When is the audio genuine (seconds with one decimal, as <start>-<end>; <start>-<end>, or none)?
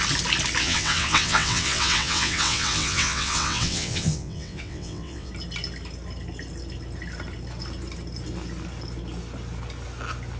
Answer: 0.0-0.6; 5.3-10.4